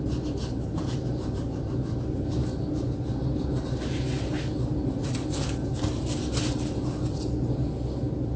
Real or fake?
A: real